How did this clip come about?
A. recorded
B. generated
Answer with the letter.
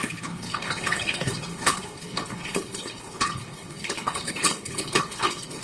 B